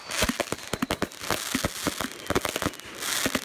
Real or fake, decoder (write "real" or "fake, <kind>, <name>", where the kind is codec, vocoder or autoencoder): real